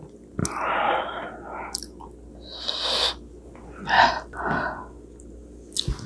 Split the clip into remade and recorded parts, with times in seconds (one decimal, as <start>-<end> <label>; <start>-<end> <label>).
0.0-6.1 recorded